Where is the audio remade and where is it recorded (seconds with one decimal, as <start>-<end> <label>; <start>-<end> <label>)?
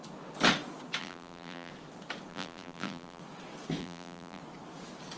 0.0-1.0 recorded; 1.0-1.7 remade; 1.7-2.3 recorded; 2.3-3.2 remade; 3.2-3.8 recorded; 3.8-4.4 remade; 4.4-5.2 recorded